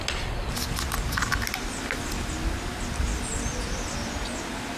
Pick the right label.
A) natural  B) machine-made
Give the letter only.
A